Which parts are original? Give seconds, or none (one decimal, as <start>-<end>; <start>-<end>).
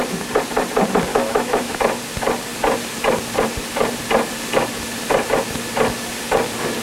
0.0-1.1; 1.8-6.8